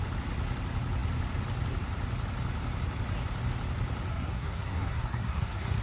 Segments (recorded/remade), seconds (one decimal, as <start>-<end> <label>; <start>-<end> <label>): 0.0-4.1 recorded; 4.1-5.8 remade